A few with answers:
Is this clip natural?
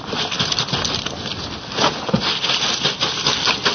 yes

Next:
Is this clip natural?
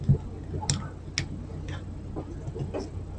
yes